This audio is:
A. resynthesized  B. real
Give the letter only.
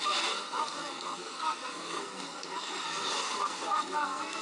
A